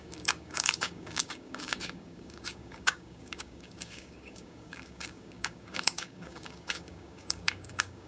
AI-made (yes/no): yes